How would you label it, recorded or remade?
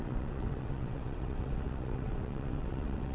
remade